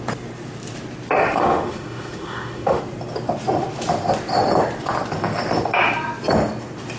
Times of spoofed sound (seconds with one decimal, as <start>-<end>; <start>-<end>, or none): 1.2-2.8